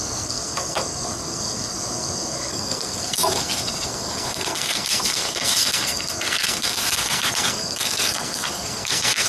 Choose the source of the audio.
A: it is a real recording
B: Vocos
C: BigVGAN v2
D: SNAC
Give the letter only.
D